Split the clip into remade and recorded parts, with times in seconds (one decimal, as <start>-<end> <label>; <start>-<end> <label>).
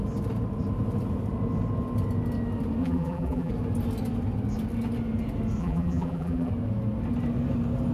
0.0-2.8 recorded; 2.8-3.5 remade; 3.5-5.6 recorded; 5.6-6.5 remade; 6.5-7.9 recorded